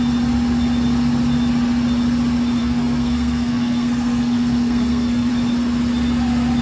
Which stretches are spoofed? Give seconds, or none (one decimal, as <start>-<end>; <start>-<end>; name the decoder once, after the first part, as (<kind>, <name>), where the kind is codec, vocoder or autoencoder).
2.6-5.3 (codec, SNAC)